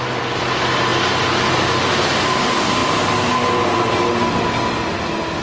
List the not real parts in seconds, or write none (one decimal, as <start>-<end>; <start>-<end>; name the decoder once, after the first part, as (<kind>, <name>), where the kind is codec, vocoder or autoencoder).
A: none

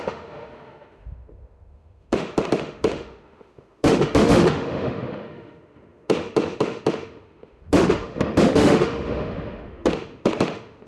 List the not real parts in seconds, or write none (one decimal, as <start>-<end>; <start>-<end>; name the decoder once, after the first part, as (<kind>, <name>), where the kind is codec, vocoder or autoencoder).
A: 0.0-10.9 (autoencoder, DAC-VAE)

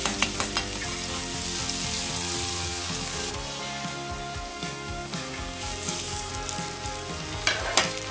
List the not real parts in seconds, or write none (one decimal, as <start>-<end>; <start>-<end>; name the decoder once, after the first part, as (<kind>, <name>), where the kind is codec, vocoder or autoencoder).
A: 2.5-3.3 (codec, DAC); 4.5-6.3

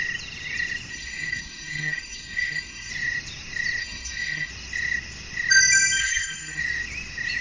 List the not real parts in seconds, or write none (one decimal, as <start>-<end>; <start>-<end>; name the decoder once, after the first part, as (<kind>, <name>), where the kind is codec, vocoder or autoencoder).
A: 0.9-2.9 (codec, SNAC); 3.8-4.5; 6.0-6.6